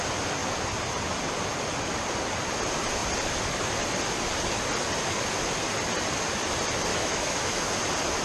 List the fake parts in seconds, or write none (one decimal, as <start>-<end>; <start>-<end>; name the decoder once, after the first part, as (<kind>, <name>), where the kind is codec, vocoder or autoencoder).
6.9-7.7 (autoencoder, DAC-VAE)

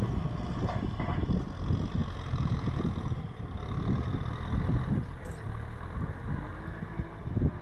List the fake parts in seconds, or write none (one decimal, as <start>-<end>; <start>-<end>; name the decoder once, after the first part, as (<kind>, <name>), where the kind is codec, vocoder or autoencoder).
none

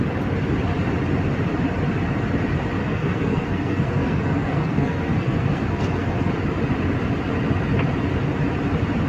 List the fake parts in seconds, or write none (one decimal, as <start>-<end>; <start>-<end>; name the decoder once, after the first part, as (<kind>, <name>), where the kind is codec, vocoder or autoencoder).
2.8-6.3 (codec, SNAC)